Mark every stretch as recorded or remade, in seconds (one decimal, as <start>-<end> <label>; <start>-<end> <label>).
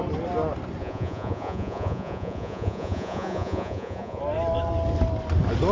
0.0-0.8 recorded; 0.8-4.2 remade; 4.2-5.7 recorded